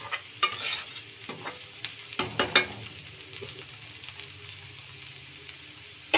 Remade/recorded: recorded